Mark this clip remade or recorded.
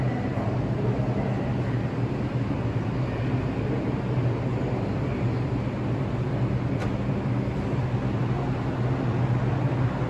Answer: recorded